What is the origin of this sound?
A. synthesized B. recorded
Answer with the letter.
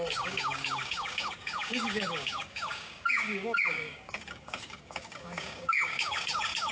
A